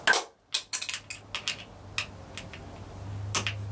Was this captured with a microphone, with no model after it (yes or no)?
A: yes